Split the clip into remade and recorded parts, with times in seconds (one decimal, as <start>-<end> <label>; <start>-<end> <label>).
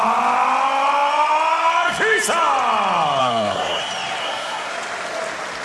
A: 0.0-3.2 recorded; 3.2-3.8 remade; 3.8-4.2 recorded; 4.2-4.7 remade; 4.7-5.6 recorded